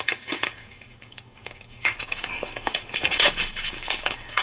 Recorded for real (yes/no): no